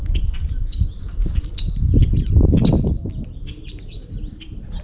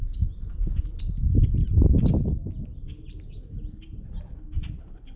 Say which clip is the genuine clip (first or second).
second